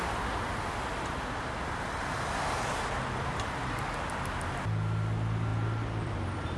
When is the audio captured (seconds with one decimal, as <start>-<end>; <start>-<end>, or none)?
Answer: 0.0-6.6

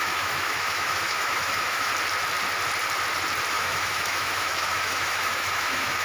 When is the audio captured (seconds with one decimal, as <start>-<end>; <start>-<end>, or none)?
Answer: 1.9-3.5

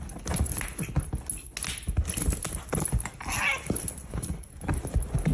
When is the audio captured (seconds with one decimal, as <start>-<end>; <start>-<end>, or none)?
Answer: 0.0-4.0; 4.5-5.3

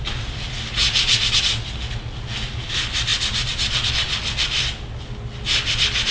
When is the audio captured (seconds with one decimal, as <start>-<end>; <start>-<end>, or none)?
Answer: 0.0-6.1

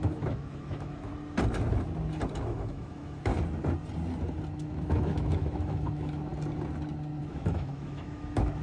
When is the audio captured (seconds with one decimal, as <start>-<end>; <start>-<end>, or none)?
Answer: 1.1-2.4; 3.3-4.5; 6.3-7.2